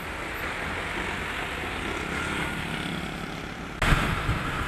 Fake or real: real